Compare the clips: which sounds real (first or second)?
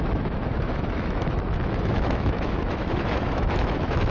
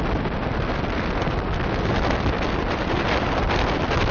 second